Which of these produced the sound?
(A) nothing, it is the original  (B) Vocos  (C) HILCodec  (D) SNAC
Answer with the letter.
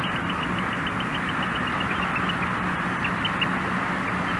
A